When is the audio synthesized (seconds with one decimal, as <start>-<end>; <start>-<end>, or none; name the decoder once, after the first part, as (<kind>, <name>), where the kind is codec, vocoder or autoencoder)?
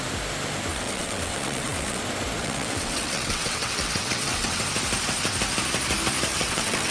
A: 0.7-2.0 (vocoder, WaveNeXt); 2.4-4.6; 6.3-6.9